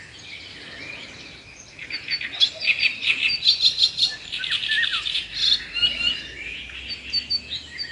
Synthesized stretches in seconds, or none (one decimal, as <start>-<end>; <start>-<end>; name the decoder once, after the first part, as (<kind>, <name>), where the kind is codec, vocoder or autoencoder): 4.9-6.6 (vocoder, BigVGAN v2)